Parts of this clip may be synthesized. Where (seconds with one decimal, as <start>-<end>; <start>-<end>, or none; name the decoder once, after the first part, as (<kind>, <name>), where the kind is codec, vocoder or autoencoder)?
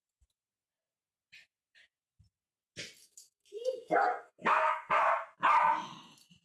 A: 3.0-5.0 (codec, SNAC)